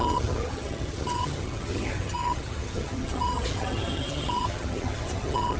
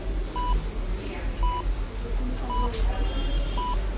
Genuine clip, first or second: second